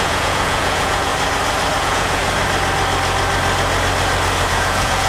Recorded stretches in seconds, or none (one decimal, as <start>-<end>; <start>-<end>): 1.1-1.8; 2.2-4.5